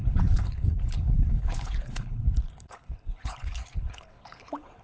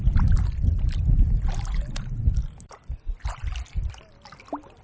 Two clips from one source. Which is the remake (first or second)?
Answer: first